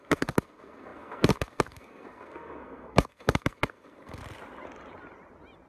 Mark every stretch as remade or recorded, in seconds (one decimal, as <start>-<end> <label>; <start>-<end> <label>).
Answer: 0.0-4.2 remade; 4.2-5.7 recorded